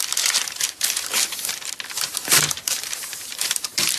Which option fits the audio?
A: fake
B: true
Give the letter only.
A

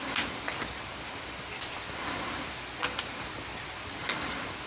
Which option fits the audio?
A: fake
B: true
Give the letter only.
B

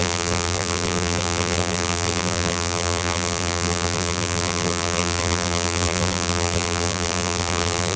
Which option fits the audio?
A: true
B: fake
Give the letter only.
B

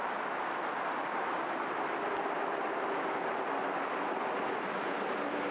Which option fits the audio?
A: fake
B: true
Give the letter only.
B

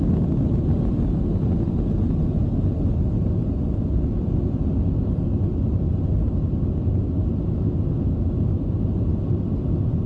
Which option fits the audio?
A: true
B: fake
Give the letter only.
A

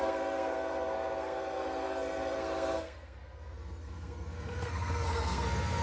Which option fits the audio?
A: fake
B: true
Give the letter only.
A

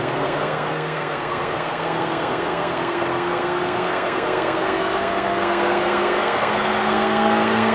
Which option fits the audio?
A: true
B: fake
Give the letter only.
B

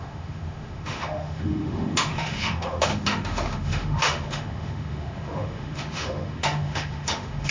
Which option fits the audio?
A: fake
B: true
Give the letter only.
A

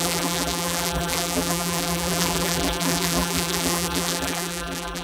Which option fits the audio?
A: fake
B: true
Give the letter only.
A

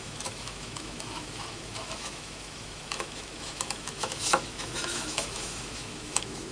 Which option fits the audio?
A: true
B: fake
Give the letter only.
B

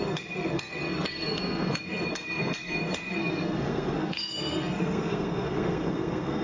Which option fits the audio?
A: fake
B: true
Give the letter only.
A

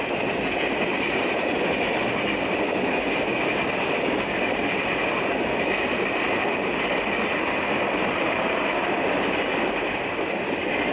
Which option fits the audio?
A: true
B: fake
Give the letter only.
A